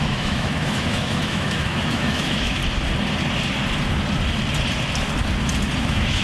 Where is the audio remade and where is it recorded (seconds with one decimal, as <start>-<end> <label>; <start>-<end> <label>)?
0.0-2.6 remade; 2.6-5.8 recorded; 5.8-6.2 remade